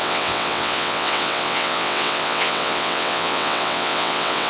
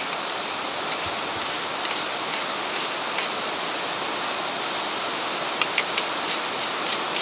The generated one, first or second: first